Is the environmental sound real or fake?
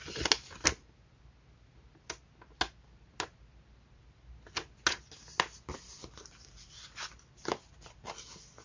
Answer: real